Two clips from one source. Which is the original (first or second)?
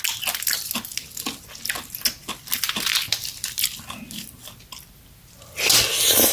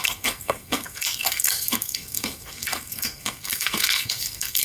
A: first